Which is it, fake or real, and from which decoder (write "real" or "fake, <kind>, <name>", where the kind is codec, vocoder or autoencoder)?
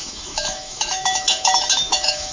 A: fake, autoencoder, DAC-VAE